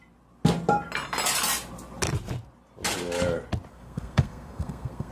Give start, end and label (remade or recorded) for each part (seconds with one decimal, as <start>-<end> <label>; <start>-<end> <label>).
0.0-3.7 recorded; 3.7-5.1 remade

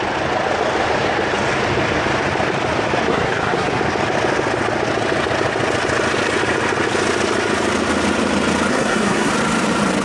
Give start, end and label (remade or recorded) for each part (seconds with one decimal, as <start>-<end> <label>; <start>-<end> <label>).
0.0-3.1 recorded; 3.1-3.8 remade; 3.8-8.7 recorded; 8.7-9.3 remade; 9.3-10.0 recorded

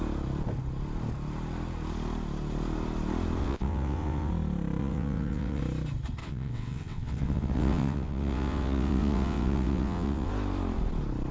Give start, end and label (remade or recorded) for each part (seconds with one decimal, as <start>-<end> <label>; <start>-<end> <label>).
0.0-3.4 recorded; 3.4-4.3 remade; 4.3-4.8 recorded; 4.8-5.6 remade; 5.6-6.2 recorded; 6.2-10.3 remade; 10.3-11.3 recorded

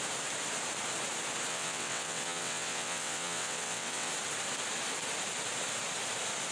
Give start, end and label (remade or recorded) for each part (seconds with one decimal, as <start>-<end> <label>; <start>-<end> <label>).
0.0-1.5 recorded; 1.5-4.1 remade; 4.1-6.5 recorded

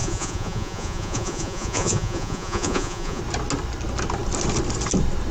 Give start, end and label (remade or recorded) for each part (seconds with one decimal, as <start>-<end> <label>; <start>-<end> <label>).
0.0-3.2 remade; 3.2-5.3 recorded

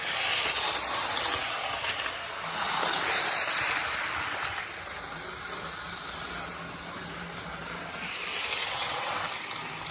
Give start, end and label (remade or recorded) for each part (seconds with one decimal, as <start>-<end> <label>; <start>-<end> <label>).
0.0-8.6 recorded; 8.6-9.3 remade; 9.3-9.9 recorded